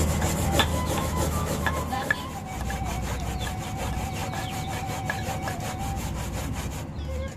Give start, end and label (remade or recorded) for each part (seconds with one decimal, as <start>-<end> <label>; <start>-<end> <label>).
0.0-0.7 recorded; 0.7-1.6 remade; 1.6-7.4 recorded

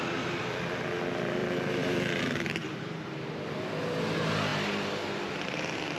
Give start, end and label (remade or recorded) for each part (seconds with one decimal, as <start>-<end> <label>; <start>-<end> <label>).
0.0-1.4 recorded; 1.4-3.3 remade; 3.3-6.0 recorded

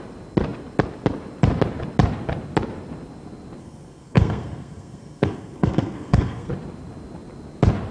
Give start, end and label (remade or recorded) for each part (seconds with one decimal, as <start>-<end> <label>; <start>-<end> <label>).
0.0-3.6 recorded; 3.6-6.5 remade; 6.5-7.9 recorded